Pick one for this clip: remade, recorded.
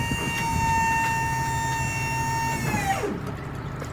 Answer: recorded